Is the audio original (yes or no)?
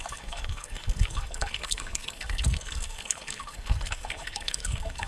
no